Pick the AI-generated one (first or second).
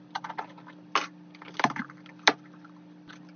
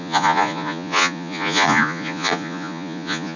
second